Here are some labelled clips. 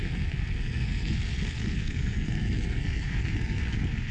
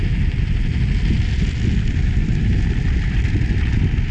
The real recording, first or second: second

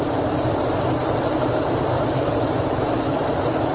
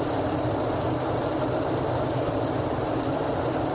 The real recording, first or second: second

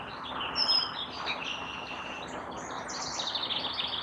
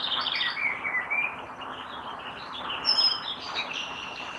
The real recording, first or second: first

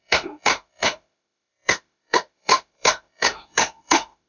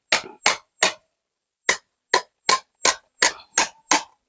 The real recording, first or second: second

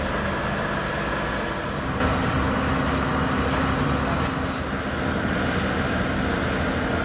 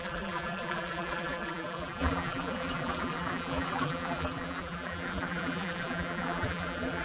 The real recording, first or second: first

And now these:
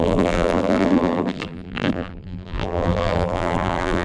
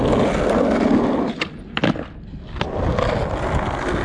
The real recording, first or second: second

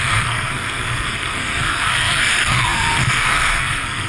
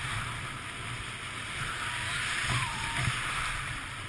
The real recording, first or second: second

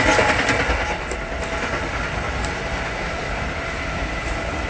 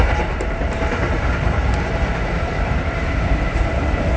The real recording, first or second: first